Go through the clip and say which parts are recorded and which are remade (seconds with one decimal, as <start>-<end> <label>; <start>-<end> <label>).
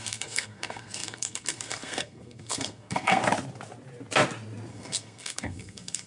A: 0.0-3.2 remade; 3.2-4.7 recorded; 4.7-6.1 remade